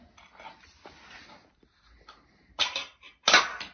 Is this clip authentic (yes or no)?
yes